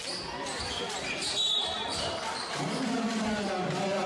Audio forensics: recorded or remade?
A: recorded